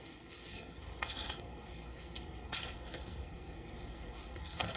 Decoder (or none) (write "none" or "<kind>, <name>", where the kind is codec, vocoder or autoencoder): codec, SNAC